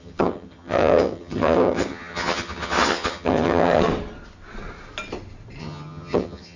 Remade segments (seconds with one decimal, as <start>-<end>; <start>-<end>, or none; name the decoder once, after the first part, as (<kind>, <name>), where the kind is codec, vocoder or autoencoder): 0.0-3.9 (vocoder, HiFi-GAN); 5.6-6.6